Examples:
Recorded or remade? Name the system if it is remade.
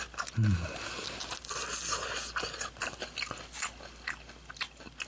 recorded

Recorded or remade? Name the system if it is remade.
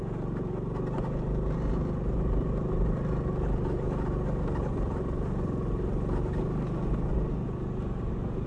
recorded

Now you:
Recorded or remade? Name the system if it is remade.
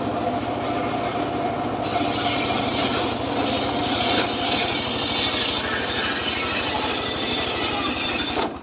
recorded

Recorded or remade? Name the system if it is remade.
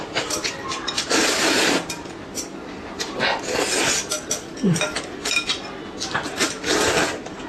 recorded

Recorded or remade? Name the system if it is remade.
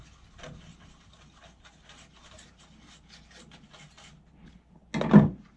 recorded